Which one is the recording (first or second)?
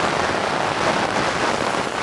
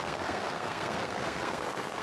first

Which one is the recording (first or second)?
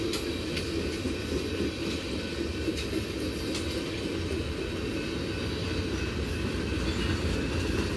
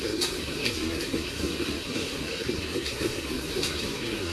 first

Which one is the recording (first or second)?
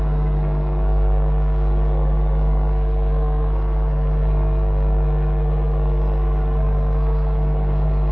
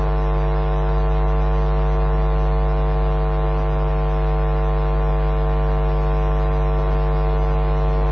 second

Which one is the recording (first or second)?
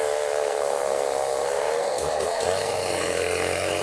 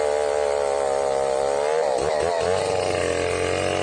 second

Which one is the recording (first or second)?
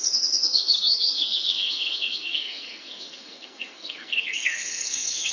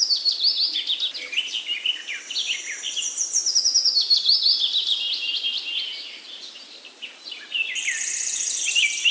second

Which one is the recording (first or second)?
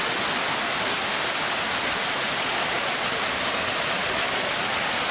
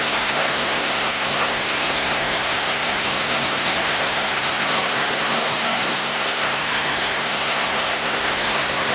first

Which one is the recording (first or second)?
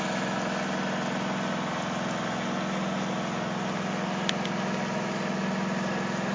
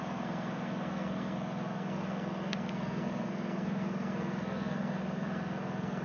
first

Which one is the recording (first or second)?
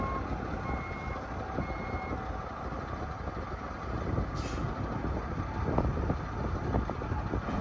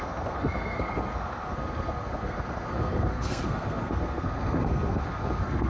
first